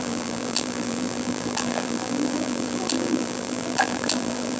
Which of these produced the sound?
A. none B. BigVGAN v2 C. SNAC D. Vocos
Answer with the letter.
B